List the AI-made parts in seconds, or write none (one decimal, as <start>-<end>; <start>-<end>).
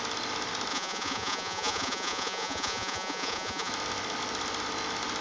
0.7-3.7